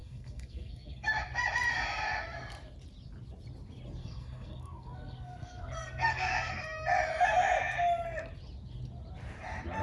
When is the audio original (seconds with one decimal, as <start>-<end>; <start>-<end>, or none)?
1.1-4.0; 6.5-9.8